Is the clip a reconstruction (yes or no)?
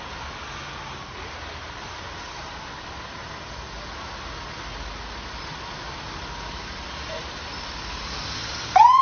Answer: no